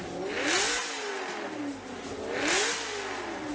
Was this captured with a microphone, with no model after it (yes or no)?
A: yes